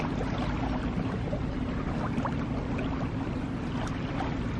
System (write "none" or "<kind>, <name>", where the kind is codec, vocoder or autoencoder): none